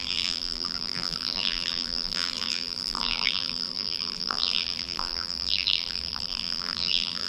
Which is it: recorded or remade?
remade